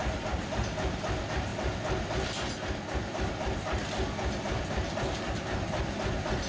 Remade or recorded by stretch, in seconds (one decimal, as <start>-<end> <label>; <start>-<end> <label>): 0.0-6.5 recorded